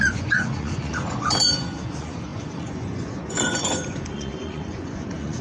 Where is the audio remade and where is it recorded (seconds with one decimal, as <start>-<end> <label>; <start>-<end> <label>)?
0.0-5.4 remade